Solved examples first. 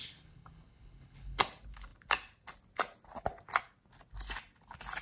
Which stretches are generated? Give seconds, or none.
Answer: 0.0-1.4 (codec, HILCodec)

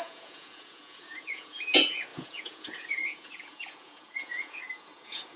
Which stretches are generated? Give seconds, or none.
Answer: 0.0-5.4 (vocoder, Vocos)